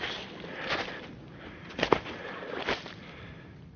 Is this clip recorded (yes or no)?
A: yes